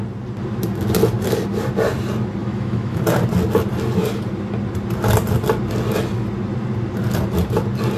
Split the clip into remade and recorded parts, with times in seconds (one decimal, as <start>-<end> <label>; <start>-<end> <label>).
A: 0.0-2.4 recorded; 2.4-3.0 remade; 3.0-8.0 recorded